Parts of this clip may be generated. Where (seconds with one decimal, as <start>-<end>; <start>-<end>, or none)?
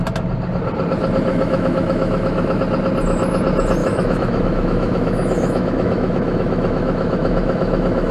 1.3-2.6; 3.8-8.1